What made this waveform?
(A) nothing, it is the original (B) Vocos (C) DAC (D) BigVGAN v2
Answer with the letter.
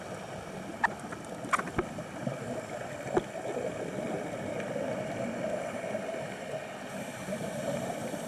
D